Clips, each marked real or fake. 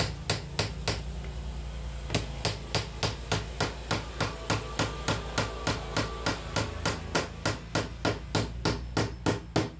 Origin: real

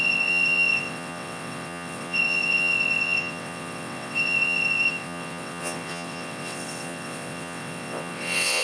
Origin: fake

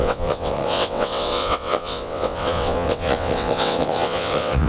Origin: fake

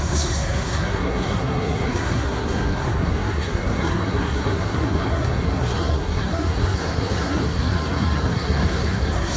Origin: fake